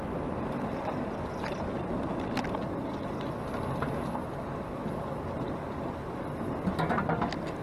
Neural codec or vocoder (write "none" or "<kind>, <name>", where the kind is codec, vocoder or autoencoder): none